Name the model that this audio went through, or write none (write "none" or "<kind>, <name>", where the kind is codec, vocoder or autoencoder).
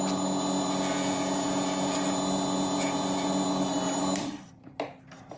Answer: none